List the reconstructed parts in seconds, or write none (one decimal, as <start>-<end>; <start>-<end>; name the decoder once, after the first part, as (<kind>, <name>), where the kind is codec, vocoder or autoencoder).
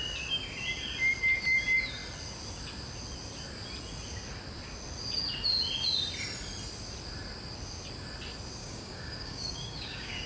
8.6-10.3 (codec, DAC)